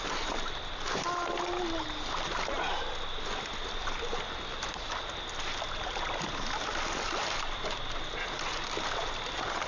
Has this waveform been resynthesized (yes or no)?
no